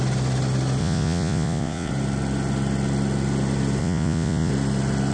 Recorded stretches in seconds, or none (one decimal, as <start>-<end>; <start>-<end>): 0.0-0.8; 1.9-3.8; 4.5-5.1